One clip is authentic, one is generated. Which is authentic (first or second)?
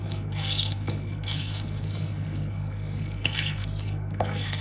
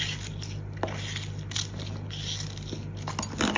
second